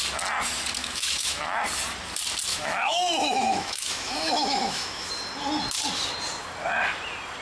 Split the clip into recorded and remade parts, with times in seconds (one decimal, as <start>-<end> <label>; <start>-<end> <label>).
0.0-0.8 recorded; 0.8-1.4 remade; 1.4-2.5 recorded; 2.5-5.1 remade; 5.1-7.4 recorded